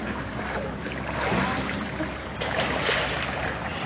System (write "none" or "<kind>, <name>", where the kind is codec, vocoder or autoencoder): vocoder, BigVGAN v2